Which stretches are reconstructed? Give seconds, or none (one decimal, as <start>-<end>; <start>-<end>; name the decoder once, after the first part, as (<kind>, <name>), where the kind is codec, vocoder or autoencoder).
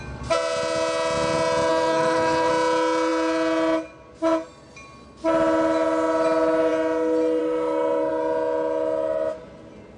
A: 1.7-2.5 (codec, SNAC); 7.4-8.1